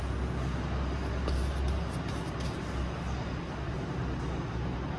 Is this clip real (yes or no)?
yes